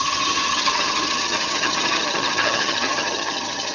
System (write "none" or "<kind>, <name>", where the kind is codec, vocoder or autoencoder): vocoder, HiFi-GAN